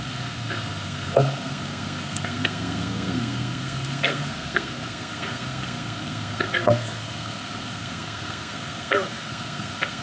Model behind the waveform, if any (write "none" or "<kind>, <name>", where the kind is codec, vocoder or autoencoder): codec, SNAC